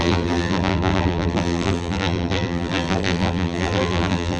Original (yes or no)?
no